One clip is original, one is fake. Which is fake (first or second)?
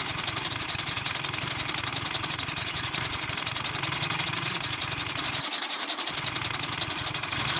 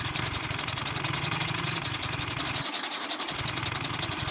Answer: first